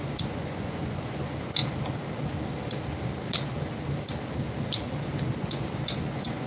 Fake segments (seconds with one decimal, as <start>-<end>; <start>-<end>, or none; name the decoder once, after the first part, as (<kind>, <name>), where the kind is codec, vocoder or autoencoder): 0.0-1.6 (vocoder, Vocos); 5.4-6.5